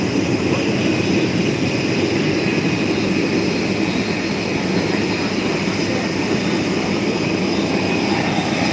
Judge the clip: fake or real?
real